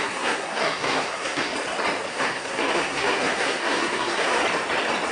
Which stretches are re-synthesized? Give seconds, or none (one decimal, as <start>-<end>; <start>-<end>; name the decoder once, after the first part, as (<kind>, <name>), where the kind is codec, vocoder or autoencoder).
0.0-1.5 (codec, SNAC); 2.1-4.4